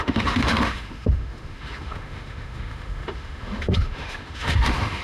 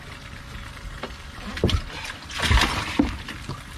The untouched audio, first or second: second